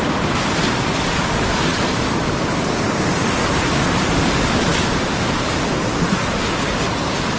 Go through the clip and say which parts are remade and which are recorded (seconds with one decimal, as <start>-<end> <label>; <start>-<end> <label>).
0.0-7.4 recorded